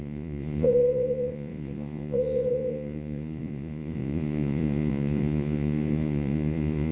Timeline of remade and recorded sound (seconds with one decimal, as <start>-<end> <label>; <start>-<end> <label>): 0.0-6.9 remade